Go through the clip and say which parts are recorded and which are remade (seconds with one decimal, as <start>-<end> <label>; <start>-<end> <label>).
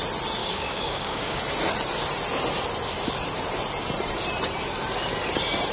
0.0-0.4 recorded; 0.4-1.4 remade; 1.4-5.7 recorded